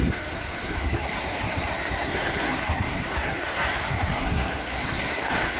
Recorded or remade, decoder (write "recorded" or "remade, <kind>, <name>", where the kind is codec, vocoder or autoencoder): remade, codec, SNAC